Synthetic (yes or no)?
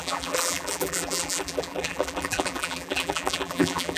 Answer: yes